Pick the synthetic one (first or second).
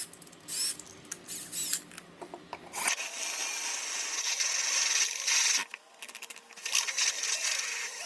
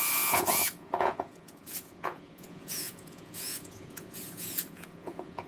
second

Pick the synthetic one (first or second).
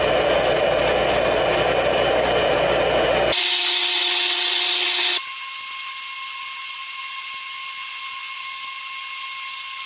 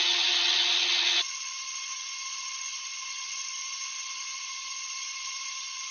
second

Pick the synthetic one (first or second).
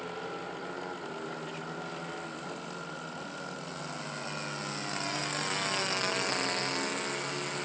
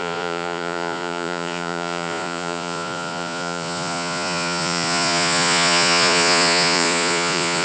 second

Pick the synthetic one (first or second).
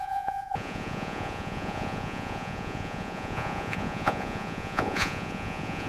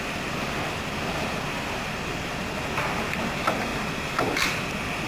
first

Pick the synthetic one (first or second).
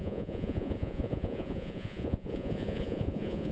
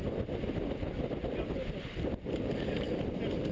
first